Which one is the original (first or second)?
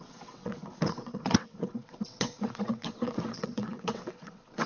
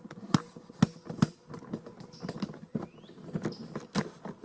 second